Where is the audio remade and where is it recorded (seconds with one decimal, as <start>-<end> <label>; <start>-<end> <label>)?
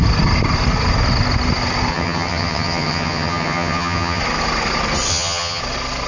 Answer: 0.0-1.9 recorded; 1.9-4.2 remade; 4.2-5.1 recorded; 5.1-5.6 remade; 5.6-6.1 recorded